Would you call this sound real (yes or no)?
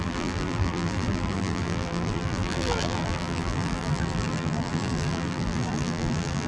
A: no